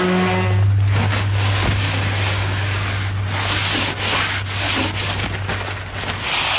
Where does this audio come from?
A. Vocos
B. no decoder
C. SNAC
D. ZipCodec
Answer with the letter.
B